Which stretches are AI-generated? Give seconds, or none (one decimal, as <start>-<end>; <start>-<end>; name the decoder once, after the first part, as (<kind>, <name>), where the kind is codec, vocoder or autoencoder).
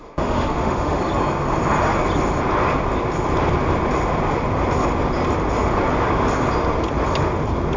0.0-1.0 (autoencoder, DAC-VAE)